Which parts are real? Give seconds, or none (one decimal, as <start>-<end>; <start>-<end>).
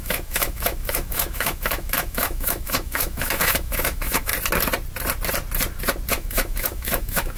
4.3-6.1